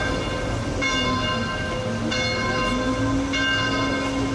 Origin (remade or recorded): recorded